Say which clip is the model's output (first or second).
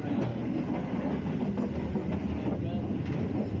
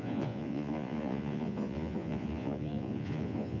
second